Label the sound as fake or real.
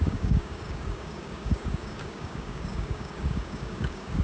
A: fake